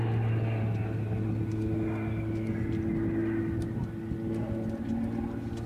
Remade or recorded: recorded